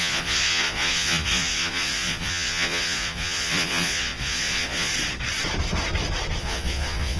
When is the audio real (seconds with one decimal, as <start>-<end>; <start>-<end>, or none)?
4.9-6.4